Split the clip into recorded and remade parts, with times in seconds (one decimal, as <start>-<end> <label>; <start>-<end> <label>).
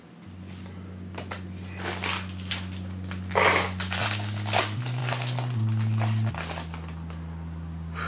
0.0-8.1 recorded